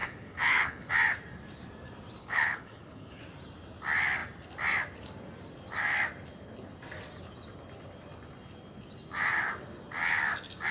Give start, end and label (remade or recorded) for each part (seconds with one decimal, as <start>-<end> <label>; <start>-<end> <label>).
0.0-0.9 remade; 0.9-2.2 recorded; 2.2-3.2 remade; 3.2-10.7 recorded

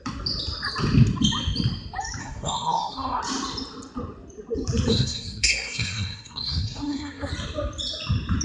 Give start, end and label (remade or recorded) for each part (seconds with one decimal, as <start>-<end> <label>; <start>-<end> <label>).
0.0-2.2 recorded; 2.2-3.2 remade; 3.2-4.9 recorded; 4.9-7.3 remade; 7.3-8.4 recorded

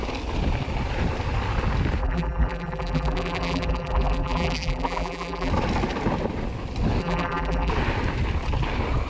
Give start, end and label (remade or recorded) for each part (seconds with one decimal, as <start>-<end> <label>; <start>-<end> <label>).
0.0-2.0 recorded; 2.0-5.5 remade; 5.5-7.0 recorded; 7.0-7.7 remade; 7.7-9.1 recorded

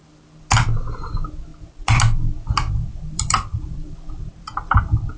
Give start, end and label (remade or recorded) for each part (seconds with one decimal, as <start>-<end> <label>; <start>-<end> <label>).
0.0-2.9 recorded; 2.9-5.2 remade

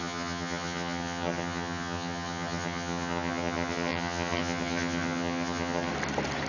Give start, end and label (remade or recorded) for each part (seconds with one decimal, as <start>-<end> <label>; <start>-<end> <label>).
0.0-5.9 remade; 5.9-6.5 recorded

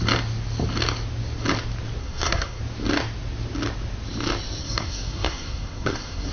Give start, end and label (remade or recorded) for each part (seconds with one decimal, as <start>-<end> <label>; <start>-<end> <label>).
0.0-2.0 recorded; 2.0-2.6 remade; 2.6-4.6 recorded; 4.6-6.3 remade

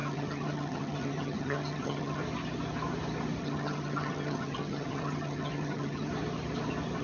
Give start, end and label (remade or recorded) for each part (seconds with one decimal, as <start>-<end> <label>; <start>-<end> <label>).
0.0-2.2 remade; 2.2-3.4 recorded; 3.4-6.1 remade; 6.1-7.0 recorded

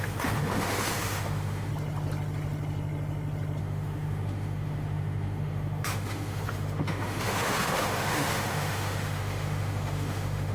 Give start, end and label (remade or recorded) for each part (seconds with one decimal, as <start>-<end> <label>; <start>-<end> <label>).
0.0-1.7 remade; 1.7-3.6 recorded; 3.6-10.5 remade